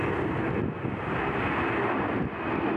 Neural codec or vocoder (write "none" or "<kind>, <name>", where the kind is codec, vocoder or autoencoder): none